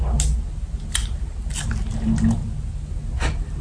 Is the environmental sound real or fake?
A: real